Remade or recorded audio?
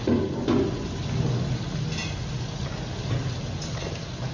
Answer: recorded